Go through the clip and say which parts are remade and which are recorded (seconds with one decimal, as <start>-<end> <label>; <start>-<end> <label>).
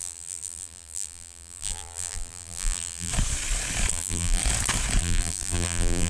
0.0-3.1 remade; 3.1-3.9 recorded; 3.9-4.4 remade; 4.4-5.0 recorded; 5.0-6.1 remade